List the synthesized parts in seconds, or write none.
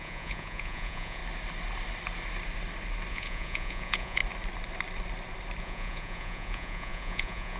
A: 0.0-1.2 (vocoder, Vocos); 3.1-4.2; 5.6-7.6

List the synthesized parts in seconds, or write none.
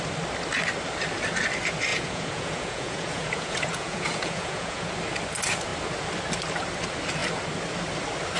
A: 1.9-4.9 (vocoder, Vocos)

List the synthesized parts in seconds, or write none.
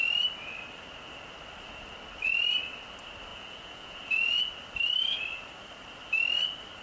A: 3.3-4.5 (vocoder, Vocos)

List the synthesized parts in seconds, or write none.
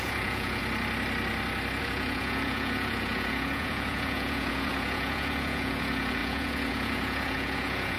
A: 0.0-0.6 (vocoder, Vocos); 1.8-8.0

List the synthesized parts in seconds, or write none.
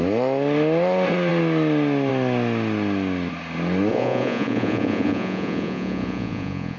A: 3.9-6.8 (vocoder, Vocos)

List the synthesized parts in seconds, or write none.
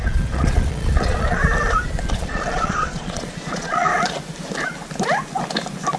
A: 0.0-1.4 (vocoder, Vocos); 2.1-3.9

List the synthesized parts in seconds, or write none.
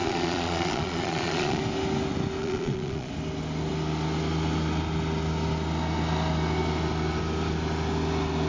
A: 0.0-1.6 (vocoder, Vocos); 2.4-3.1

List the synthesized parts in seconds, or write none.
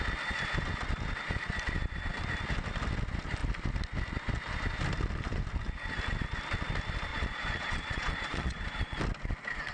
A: 7.1-9.0 (vocoder, Vocos)